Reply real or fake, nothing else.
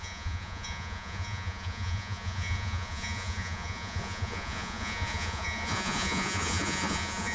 fake